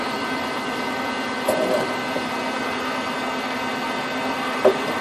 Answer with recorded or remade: recorded